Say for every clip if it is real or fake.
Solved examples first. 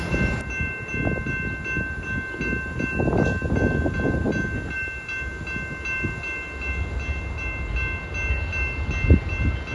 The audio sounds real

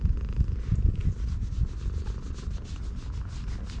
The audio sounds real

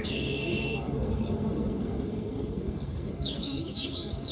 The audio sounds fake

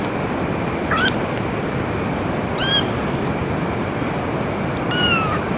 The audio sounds fake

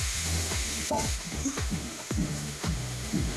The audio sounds fake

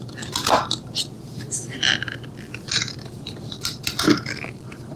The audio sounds real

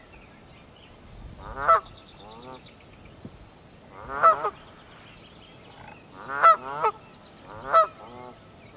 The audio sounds real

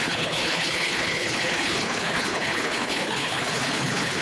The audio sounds fake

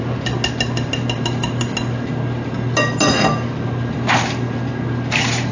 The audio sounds real